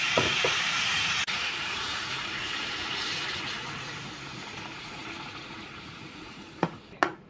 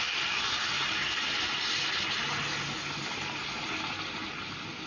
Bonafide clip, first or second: second